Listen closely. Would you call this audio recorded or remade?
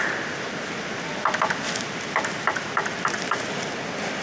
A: recorded